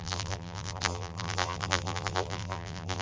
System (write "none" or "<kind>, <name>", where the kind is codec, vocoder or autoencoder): vocoder, BigVGAN v2